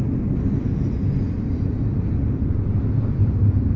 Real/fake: real